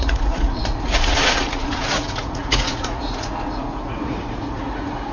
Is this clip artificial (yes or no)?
yes